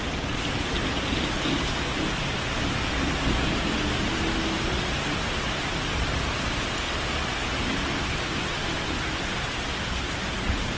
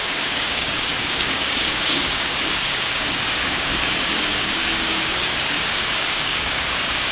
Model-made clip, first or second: second